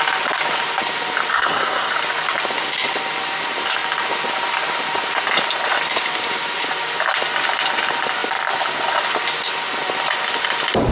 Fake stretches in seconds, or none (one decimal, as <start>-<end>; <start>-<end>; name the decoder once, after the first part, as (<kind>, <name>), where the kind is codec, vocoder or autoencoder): 1.3-1.9 (codec, SNAC)